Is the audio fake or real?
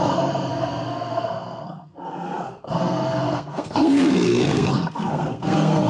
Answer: fake